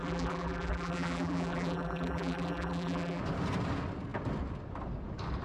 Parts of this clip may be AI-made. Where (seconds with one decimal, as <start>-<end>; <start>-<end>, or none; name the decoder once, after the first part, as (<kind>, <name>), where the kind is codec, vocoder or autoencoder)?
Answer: 0.0-3.2 (vocoder, BigVGAN v2)